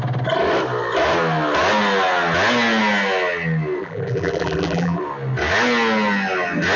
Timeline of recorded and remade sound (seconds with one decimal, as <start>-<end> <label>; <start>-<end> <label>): 0.0-3.8 recorded; 3.8-5.0 remade; 5.0-6.8 recorded